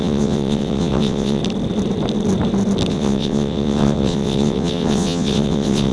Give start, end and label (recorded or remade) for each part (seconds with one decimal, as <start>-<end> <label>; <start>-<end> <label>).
0.0-1.4 remade; 1.4-2.9 recorded; 2.9-5.9 remade